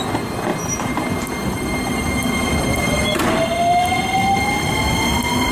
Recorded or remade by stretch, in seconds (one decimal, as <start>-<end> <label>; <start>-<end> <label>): 0.0-5.5 recorded